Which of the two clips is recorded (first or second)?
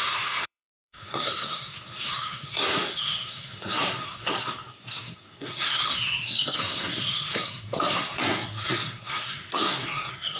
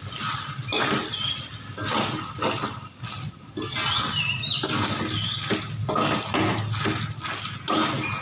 second